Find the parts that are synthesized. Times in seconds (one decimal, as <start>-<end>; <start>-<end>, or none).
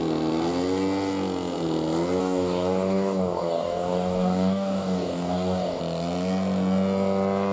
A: 2.2-5.8